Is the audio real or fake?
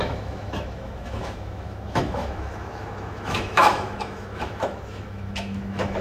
fake